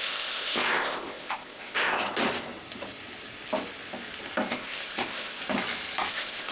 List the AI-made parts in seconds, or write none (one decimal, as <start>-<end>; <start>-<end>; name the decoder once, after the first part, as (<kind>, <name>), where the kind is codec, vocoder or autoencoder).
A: 0.0-2.0 (codec, ZipCodec); 4.5-5.4; 6.1-6.5